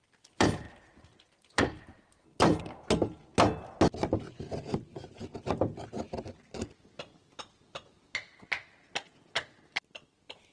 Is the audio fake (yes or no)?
no